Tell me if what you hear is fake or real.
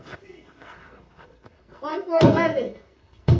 fake